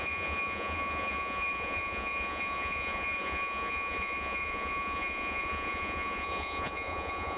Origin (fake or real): fake